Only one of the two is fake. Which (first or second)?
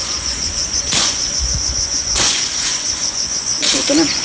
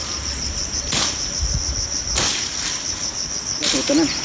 first